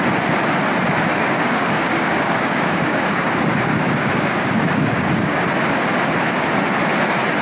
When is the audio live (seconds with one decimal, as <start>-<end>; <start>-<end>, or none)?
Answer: 0.0-1.1; 5.4-7.4